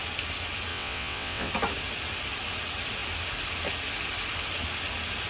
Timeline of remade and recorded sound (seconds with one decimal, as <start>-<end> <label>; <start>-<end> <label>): 0.0-0.7 recorded; 0.7-1.5 remade; 1.5-5.3 recorded